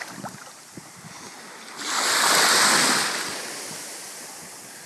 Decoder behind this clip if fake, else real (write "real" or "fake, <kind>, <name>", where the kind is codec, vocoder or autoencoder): real